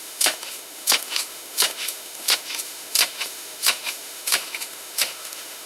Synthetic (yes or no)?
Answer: yes